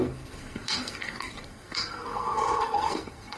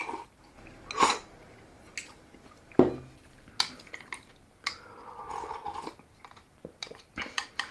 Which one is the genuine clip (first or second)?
second